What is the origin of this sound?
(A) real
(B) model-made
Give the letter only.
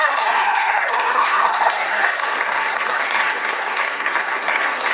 B